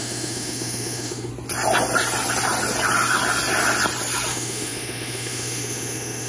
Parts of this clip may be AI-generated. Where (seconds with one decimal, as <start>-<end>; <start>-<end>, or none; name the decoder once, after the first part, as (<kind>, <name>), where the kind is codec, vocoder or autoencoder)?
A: 0.0-1.3 (autoencoder, DAC-VAE); 4.3-6.3